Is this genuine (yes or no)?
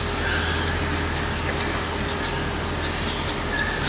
yes